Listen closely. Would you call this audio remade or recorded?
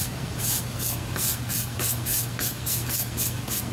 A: remade